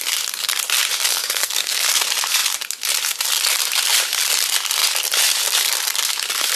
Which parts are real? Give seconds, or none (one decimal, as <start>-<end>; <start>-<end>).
0.0-1.1; 1.8-6.6